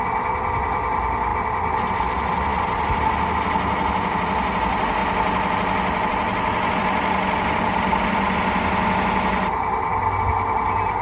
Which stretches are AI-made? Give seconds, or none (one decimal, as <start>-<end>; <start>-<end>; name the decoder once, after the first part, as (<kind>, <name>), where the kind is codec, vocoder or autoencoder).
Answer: none